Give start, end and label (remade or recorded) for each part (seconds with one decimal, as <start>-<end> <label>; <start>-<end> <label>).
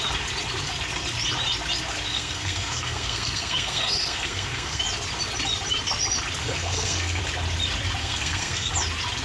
0.0-2.1 recorded; 2.1-4.8 remade; 4.8-6.4 recorded; 6.4-7.2 remade; 7.2-8.0 recorded; 8.0-8.7 remade; 8.7-9.2 recorded